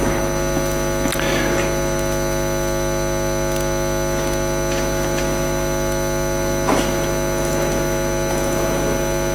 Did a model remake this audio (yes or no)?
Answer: no